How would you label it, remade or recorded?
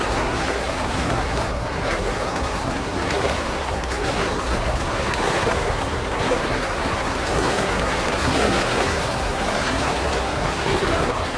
remade